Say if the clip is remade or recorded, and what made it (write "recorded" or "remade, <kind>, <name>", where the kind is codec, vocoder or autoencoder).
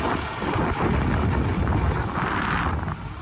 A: recorded